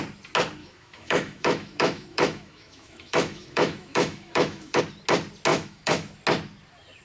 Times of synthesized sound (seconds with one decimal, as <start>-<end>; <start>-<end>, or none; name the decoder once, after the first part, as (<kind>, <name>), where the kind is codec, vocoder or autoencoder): 0.6-4.8 (autoencoder, DAC-VAE); 5.5-6.2